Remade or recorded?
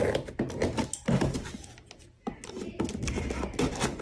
recorded